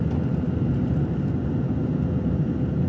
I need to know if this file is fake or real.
real